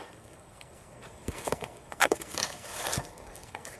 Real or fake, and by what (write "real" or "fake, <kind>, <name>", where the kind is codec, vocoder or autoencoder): fake, codec, SNAC